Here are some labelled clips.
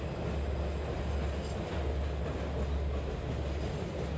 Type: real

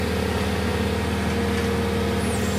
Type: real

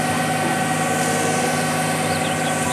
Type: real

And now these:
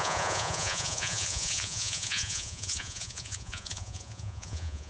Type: fake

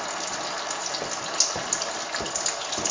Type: real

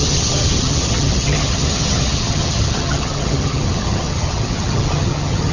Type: fake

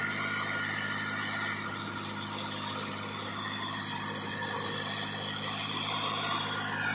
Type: real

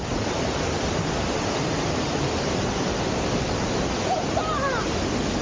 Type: real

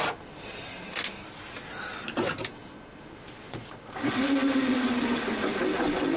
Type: real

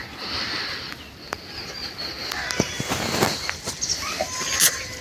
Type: real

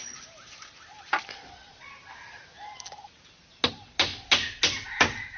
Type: real